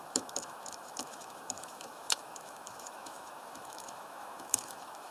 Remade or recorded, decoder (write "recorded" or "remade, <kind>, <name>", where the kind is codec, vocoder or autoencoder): remade, autoencoder, DAC-VAE